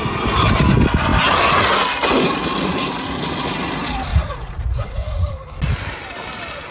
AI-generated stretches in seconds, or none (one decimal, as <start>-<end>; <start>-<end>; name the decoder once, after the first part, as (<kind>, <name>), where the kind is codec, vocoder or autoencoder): 4.1-5.3 (vocoder, Vocos)